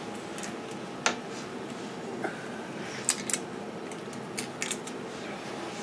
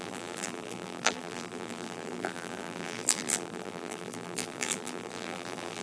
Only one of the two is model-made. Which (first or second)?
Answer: second